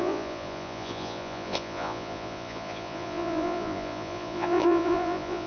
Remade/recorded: remade